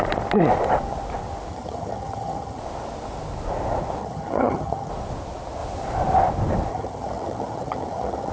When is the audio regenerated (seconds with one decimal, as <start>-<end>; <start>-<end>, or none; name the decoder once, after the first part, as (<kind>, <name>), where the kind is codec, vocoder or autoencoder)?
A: 1.5-2.6 (vocoder, HiFi-GAN); 4.0-4.9; 6.7-8.3